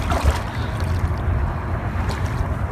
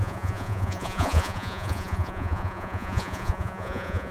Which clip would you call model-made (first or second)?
second